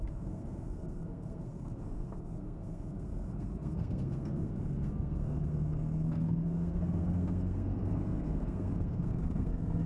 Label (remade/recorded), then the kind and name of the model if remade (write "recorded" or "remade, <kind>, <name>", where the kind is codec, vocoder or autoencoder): remade, codec, SNAC